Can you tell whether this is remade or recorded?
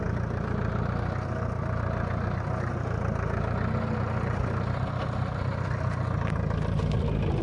recorded